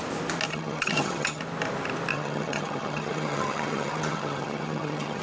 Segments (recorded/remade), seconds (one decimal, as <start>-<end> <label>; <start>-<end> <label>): 0.0-0.5 recorded; 0.5-1.4 remade; 1.4-2.1 recorded; 2.1-5.2 remade